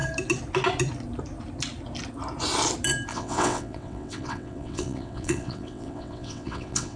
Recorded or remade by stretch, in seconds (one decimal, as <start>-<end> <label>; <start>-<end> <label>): 0.0-3.1 recorded; 3.1-7.0 remade